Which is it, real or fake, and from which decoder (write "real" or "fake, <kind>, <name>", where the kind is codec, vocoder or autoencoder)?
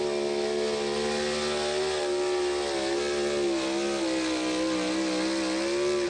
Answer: real